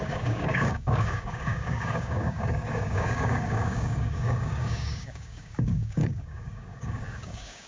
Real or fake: fake